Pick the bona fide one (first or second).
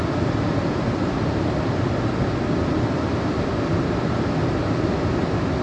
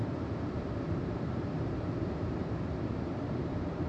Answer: first